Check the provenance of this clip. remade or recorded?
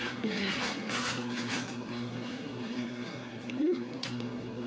remade